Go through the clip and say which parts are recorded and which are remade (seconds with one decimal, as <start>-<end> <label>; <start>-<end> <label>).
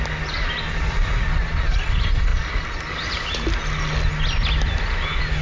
0.0-5.4 recorded